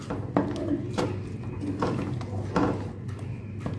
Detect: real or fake real